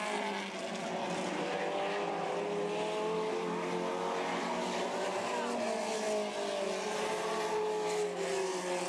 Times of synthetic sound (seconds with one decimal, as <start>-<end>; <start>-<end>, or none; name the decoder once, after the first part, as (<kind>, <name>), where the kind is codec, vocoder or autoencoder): none